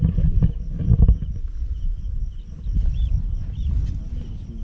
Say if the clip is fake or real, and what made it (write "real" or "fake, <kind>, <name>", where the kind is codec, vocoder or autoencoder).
real